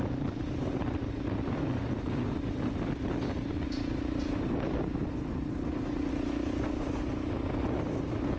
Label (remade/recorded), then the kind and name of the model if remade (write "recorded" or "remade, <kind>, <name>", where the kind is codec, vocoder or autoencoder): recorded